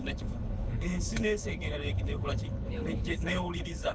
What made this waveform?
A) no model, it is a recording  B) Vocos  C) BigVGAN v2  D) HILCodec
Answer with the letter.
D